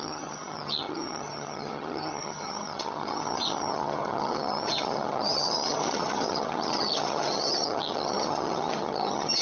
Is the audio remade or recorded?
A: remade